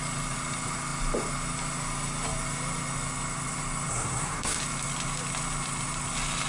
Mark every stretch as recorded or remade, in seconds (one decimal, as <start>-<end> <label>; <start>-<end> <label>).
0.0-3.9 recorded; 3.9-4.6 remade; 4.6-6.5 recorded